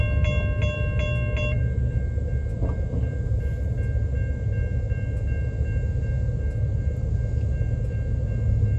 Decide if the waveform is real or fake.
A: real